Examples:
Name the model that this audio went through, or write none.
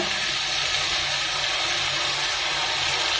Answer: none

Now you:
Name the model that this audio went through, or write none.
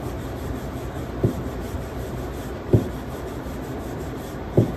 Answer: vocoder, BigVGAN v2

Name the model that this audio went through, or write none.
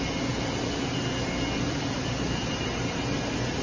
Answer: none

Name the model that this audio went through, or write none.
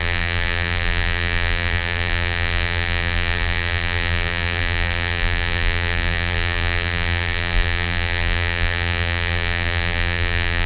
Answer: vocoder, BigVGAN v2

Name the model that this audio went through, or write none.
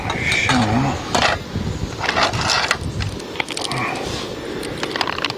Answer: none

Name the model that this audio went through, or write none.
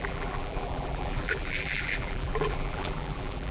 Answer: vocoder, BigVGAN v2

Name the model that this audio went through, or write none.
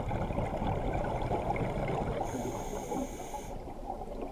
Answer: none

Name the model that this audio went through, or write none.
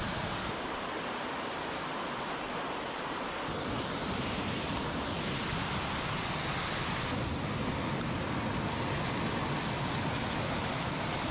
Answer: none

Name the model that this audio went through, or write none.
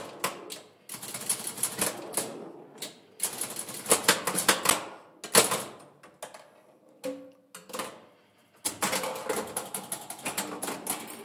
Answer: none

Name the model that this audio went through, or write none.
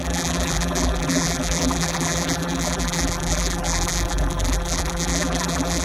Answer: vocoder, BigVGAN v2